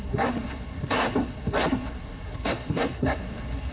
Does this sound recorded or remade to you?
remade